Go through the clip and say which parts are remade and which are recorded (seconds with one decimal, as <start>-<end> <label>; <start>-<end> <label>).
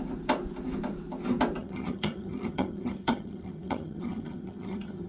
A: 0.0-1.6 recorded; 1.6-5.1 remade